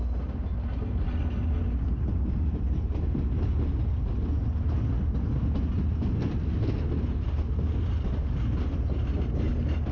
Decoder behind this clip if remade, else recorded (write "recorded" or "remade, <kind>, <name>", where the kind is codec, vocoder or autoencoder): recorded